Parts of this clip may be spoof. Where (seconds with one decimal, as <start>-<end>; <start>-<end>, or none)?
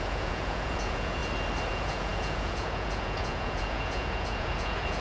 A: 0.0-1.2; 1.7-5.0